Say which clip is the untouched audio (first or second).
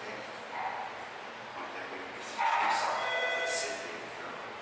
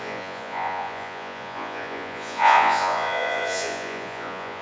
first